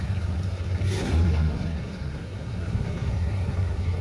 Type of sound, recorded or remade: remade